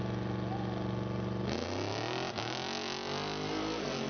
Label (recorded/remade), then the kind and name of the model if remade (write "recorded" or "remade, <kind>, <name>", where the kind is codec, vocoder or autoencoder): recorded